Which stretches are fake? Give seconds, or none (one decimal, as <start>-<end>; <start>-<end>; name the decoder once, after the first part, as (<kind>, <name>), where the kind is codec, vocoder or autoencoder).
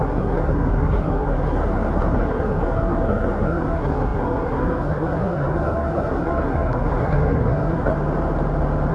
0.0-7.9 (codec, SNAC)